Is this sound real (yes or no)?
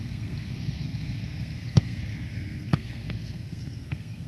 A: no